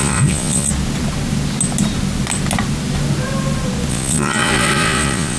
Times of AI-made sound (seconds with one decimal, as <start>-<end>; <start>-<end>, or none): 0.0-0.7; 3.9-5.4